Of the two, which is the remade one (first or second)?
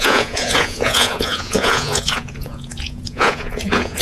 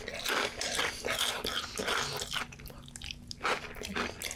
first